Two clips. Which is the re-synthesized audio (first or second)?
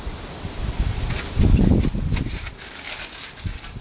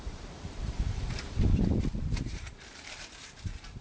second